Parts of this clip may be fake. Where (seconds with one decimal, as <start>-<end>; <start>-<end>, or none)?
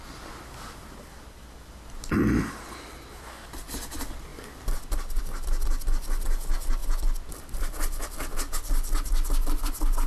none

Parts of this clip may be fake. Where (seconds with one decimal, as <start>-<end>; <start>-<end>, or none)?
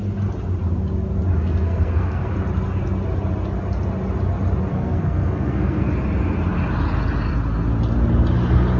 1.4-2.3; 4.7-5.9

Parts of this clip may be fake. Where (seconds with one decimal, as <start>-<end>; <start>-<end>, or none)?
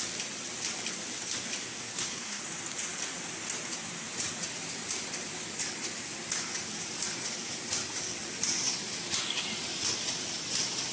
1.6-2.4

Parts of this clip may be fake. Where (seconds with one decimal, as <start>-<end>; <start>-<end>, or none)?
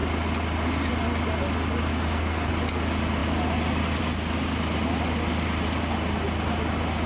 1.9-2.5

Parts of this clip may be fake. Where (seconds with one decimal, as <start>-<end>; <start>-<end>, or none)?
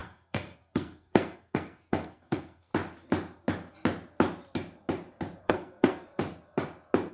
0.0-2.7; 5.4-6.2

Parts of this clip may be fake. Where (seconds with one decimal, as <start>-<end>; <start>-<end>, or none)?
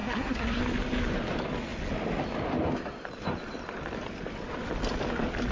0.0-0.6